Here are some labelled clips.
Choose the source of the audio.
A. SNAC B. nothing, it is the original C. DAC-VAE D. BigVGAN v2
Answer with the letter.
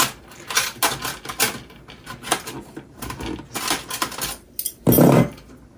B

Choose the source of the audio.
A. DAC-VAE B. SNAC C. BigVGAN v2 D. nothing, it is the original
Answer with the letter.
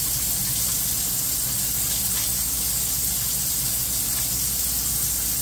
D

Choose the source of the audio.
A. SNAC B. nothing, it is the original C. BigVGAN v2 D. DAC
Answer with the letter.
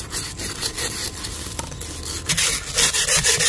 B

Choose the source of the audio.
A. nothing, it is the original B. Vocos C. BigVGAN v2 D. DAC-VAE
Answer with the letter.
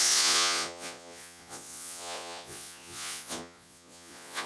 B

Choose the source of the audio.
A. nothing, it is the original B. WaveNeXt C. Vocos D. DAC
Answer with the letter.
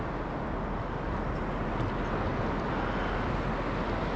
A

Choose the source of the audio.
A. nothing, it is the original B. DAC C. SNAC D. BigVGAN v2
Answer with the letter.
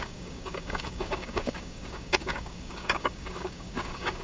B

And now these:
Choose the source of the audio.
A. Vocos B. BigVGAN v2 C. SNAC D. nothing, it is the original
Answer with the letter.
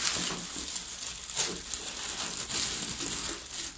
D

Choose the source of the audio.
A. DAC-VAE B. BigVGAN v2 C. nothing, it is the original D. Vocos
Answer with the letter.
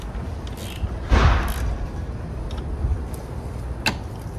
C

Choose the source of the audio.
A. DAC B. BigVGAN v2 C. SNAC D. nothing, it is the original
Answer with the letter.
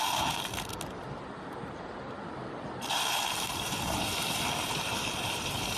D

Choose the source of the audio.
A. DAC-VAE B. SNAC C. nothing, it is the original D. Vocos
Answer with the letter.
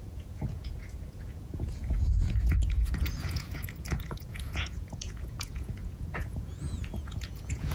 D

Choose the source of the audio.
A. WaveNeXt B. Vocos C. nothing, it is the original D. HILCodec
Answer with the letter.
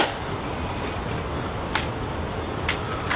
C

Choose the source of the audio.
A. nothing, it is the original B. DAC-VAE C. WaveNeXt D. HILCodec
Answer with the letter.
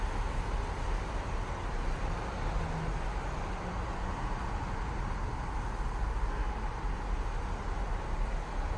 A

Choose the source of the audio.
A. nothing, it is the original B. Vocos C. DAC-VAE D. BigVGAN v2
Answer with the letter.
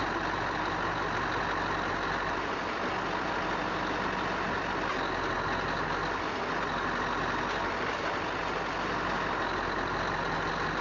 A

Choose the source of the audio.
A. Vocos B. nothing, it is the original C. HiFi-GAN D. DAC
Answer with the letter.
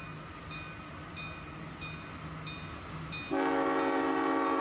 B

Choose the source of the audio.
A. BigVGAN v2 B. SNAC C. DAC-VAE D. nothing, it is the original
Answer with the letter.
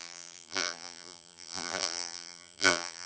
A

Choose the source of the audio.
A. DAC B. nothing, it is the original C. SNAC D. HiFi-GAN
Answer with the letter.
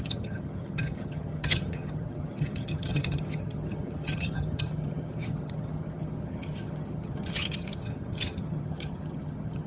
D